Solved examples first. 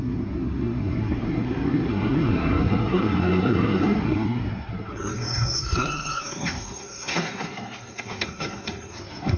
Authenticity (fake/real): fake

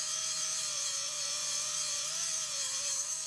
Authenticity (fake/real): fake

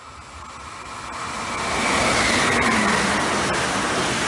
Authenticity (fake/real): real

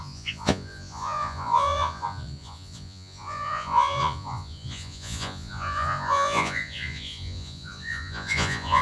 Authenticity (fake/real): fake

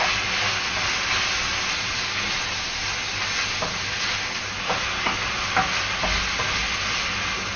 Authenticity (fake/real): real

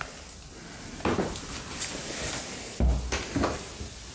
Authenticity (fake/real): real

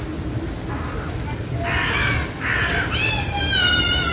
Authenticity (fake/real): real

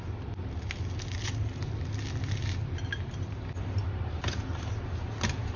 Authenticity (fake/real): real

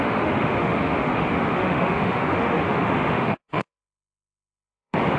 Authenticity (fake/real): fake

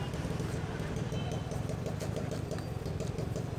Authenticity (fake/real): real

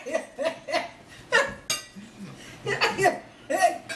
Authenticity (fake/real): real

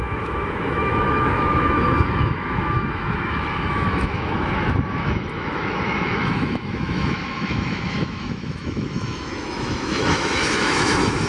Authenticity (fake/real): fake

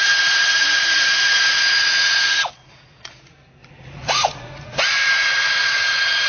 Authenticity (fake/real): fake